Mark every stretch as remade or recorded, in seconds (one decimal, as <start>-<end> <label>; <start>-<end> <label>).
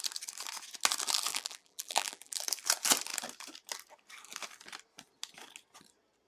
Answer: 0.0-1.3 recorded; 1.3-2.4 remade; 2.4-6.3 recorded